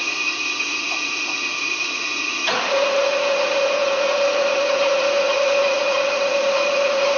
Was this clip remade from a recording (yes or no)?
yes